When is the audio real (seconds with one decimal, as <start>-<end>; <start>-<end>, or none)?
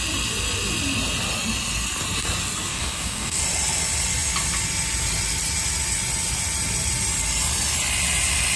0.0-2.7; 3.4-8.6